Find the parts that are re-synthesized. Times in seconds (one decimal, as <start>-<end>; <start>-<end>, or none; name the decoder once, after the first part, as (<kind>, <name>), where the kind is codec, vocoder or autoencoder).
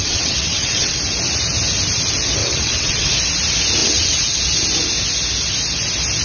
0.0-1.0 (vocoder, WaveNeXt); 2.4-3.1; 3.8-4.4